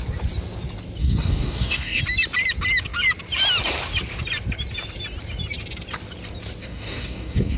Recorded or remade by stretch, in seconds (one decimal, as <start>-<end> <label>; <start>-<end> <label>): 0.0-1.0 recorded; 1.0-2.0 remade; 2.0-6.6 recorded; 6.6-7.6 remade